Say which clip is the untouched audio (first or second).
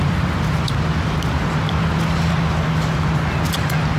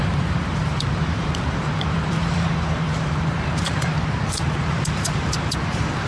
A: first